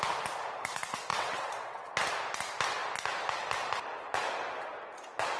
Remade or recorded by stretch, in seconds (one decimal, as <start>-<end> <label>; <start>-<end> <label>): 0.0-1.1 recorded; 1.1-1.9 remade; 1.9-5.4 recorded